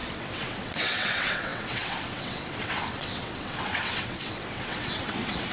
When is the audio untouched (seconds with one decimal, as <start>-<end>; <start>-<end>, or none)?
none